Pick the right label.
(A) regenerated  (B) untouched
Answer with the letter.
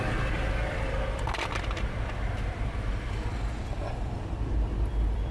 A